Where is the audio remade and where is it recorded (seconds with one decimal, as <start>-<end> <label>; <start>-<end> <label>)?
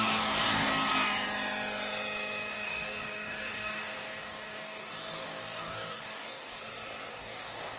0.0-0.7 remade; 0.7-2.5 recorded; 2.5-6.6 remade; 6.6-7.1 recorded; 7.1-7.8 remade